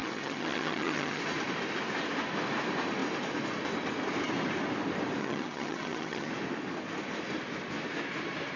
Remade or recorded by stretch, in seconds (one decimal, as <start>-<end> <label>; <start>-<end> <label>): 0.0-1.2 remade; 1.2-5.2 recorded; 5.2-6.3 remade; 6.3-8.6 recorded